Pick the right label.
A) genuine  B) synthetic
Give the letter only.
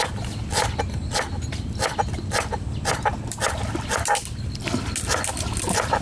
A